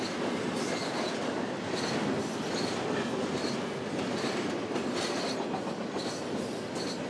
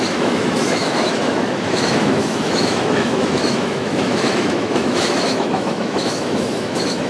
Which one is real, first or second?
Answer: first